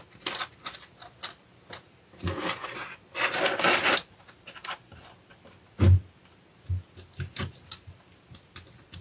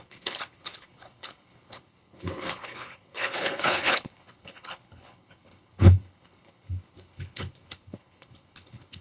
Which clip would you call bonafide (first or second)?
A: first